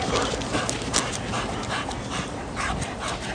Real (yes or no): yes